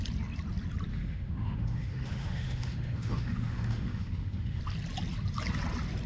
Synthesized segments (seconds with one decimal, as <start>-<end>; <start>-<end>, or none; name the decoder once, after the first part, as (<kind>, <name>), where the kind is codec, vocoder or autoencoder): 0.9-4.6 (autoencoder, DAC-VAE)